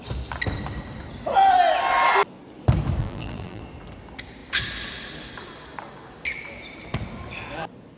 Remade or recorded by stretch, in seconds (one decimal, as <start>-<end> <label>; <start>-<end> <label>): 0.0-3.0 recorded; 3.0-3.6 remade; 3.6-8.0 recorded